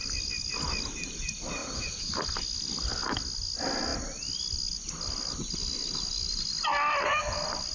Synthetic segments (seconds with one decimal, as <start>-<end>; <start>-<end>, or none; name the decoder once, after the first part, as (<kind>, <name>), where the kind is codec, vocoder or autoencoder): 1.6-2.1 (vocoder, Vocos)